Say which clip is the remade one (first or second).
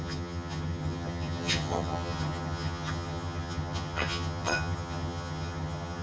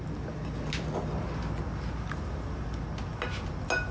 first